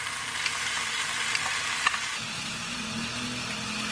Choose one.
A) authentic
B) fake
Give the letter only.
A